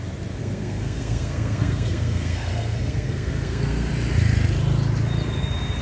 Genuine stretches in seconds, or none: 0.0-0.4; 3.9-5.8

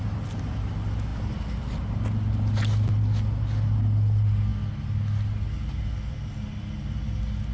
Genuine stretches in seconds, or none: 0.0-7.5

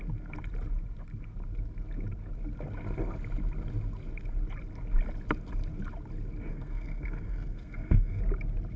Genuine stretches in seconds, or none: 0.0-6.5; 8.2-8.8

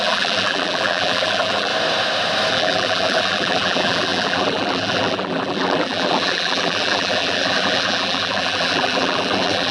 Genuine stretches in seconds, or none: 1.7-2.5

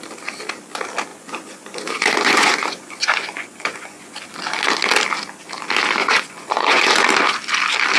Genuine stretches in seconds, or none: 0.0-1.1; 4.2-6.0; 6.9-8.0

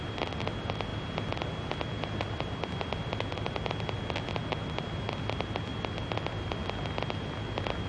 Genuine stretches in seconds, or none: 0.0-7.9